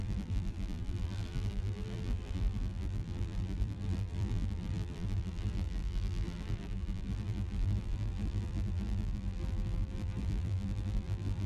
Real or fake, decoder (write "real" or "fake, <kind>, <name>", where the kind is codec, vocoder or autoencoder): fake, vocoder, BigVGAN v2